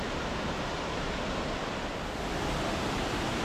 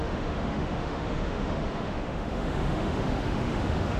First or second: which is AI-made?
second